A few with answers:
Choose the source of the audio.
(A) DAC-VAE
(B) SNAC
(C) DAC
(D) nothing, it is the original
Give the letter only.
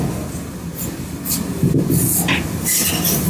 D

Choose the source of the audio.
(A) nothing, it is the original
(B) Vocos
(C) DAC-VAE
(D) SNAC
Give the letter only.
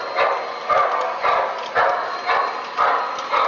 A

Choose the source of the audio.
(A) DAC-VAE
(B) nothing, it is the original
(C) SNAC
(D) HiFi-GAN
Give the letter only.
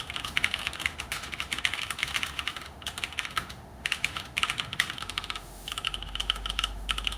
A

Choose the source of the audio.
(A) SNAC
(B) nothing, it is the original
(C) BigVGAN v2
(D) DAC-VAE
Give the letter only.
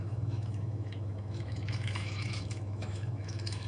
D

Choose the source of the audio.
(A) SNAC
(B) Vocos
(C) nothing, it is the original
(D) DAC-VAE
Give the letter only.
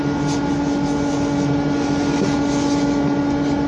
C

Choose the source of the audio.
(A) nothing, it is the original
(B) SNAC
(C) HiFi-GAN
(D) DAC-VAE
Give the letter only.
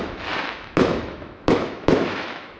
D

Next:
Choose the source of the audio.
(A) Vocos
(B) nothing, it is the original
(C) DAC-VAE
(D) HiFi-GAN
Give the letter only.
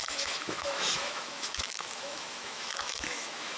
C